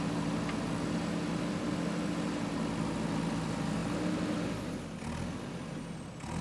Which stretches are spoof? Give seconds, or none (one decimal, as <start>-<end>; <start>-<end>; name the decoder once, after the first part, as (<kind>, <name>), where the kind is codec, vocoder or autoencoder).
none